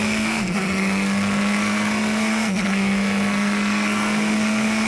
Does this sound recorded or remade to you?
remade